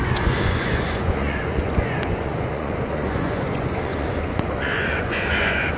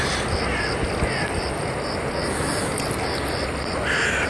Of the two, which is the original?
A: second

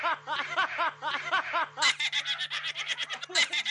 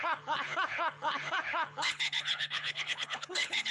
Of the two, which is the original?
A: first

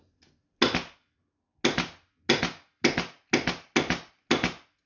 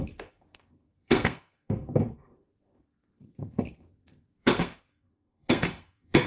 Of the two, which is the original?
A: first